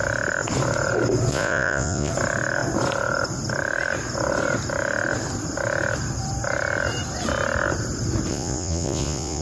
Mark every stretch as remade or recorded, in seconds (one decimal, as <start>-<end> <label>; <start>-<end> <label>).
0.0-1.3 recorded; 1.3-2.1 remade; 2.1-8.3 recorded; 8.3-9.4 remade